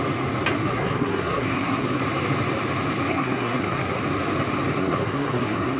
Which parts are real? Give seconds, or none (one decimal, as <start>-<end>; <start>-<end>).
0.0-0.6; 2.0-3.1; 4.0-4.8